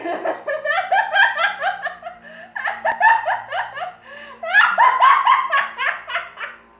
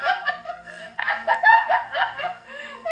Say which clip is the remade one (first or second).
second